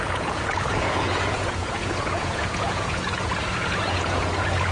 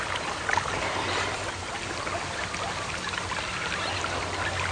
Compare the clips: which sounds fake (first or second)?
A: first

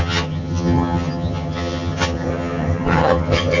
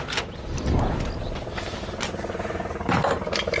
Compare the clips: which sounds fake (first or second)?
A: first